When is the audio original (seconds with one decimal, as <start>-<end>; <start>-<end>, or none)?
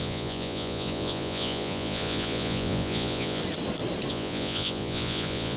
3.4-4.1